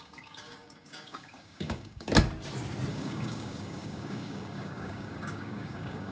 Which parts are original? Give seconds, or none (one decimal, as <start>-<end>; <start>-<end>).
2.1-2.9